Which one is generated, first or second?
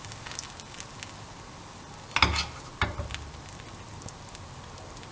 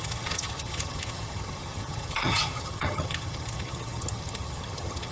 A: second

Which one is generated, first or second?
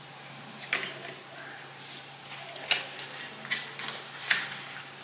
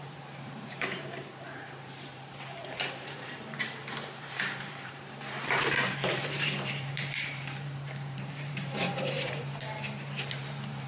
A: second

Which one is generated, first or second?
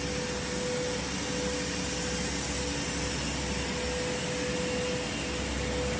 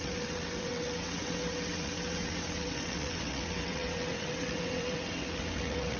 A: second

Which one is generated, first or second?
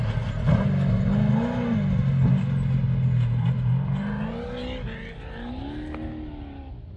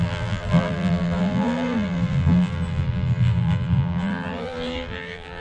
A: second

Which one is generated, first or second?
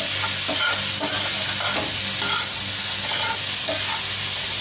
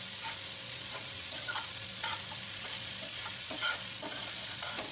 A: second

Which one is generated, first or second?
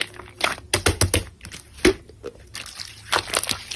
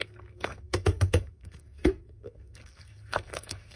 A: second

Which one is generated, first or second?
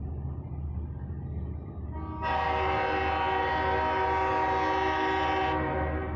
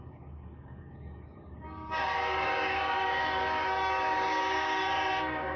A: second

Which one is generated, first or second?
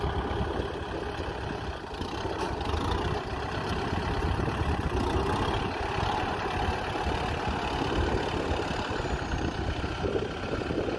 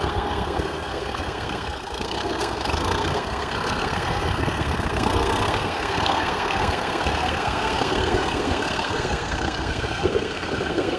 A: second